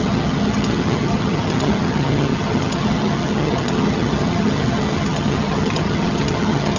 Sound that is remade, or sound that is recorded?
remade